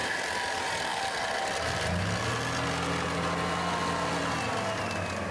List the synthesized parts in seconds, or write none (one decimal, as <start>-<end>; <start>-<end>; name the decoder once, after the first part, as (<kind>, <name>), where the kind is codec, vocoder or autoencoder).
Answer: none